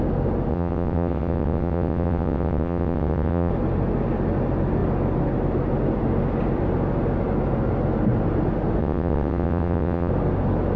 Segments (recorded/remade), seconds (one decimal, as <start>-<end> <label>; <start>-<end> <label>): 0.0-0.5 recorded; 0.5-3.5 remade; 3.5-8.8 recorded; 8.8-10.1 remade; 10.1-10.8 recorded